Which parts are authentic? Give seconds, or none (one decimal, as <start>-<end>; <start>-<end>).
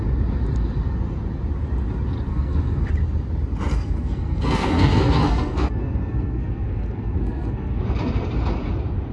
0.0-2.3; 2.9-3.7; 7.8-9.1